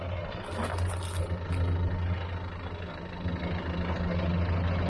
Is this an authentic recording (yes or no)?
yes